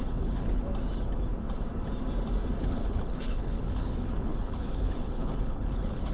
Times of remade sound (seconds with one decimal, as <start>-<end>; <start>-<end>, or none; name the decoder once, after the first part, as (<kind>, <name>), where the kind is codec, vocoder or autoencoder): 0.0-0.7 (codec, HILCodec); 2.6-6.1